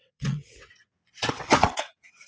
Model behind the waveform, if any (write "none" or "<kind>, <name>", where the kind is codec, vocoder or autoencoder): vocoder, WaveNeXt